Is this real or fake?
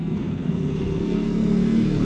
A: fake